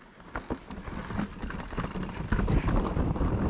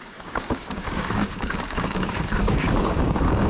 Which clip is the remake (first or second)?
second